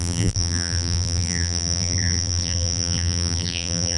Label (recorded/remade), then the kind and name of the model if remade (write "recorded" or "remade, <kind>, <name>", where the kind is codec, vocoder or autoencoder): remade, vocoder, BigVGAN v2